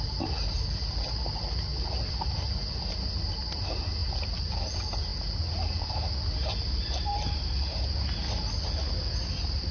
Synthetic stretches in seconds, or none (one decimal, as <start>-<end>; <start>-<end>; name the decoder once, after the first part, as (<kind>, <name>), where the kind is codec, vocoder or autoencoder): none